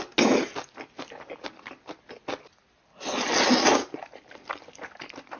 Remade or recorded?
recorded